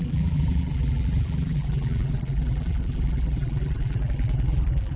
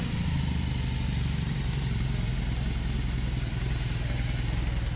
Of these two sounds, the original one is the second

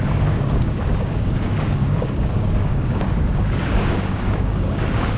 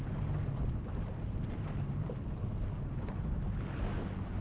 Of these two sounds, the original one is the second